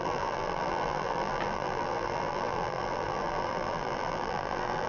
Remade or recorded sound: remade